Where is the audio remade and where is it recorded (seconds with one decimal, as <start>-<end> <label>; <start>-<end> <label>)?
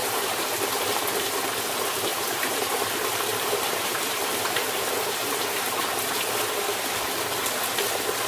0.0-0.5 remade; 0.5-2.1 recorded; 2.1-2.8 remade; 2.8-3.3 recorded; 3.3-5.8 remade; 5.8-8.3 recorded